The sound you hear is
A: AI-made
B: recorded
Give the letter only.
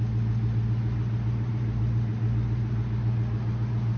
B